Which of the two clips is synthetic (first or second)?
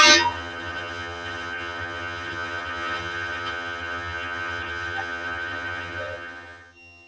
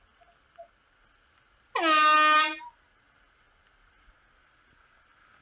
first